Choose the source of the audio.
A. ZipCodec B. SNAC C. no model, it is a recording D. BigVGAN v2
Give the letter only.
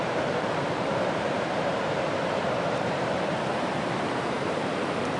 D